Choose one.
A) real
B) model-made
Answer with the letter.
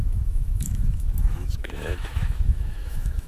B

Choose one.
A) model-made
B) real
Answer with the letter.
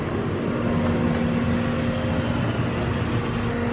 B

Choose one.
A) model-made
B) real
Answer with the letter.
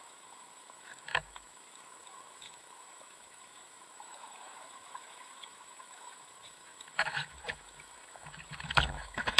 A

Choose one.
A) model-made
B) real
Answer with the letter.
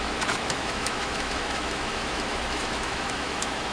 A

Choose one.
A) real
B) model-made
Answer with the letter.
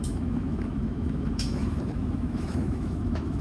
B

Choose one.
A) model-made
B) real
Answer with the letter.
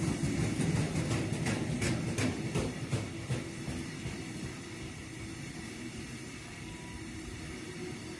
B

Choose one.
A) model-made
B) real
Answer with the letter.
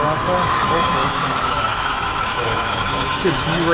A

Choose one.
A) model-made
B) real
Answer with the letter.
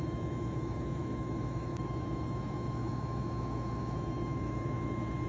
A